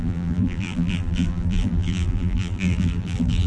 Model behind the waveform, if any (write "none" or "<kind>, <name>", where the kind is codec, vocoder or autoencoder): vocoder, BigVGAN v2